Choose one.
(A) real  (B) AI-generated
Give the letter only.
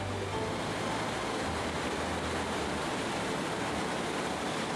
A